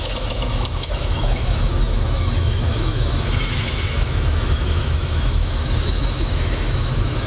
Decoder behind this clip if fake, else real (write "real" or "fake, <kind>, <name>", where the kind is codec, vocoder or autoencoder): fake, autoencoder, DAC-VAE